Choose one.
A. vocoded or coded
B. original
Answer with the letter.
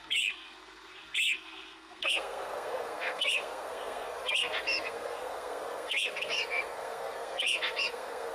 A